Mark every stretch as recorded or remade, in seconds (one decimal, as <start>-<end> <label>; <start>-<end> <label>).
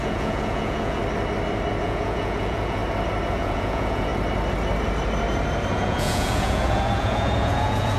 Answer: 0.0-1.0 remade; 1.0-1.8 recorded; 1.8-2.8 remade; 2.8-3.3 recorded; 3.3-4.1 remade; 4.1-5.7 recorded; 5.7-8.0 remade